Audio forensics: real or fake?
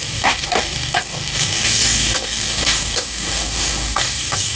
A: fake